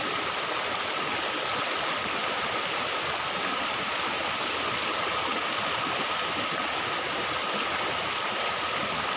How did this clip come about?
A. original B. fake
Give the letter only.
A